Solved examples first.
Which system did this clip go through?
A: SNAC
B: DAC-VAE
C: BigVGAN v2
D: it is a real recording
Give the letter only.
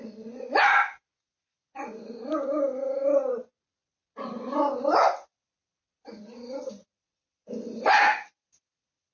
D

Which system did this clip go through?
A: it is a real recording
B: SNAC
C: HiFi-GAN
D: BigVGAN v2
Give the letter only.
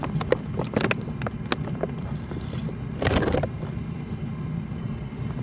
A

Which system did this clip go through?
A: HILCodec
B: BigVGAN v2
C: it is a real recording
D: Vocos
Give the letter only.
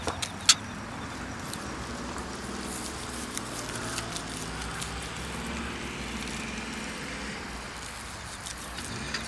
C